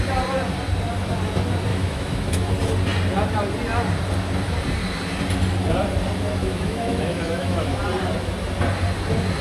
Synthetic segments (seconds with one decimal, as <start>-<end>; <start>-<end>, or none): 1.7-2.5; 6.4-7.8